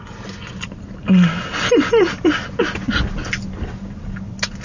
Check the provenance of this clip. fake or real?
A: real